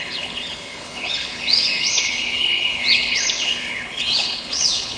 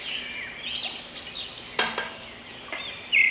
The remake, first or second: first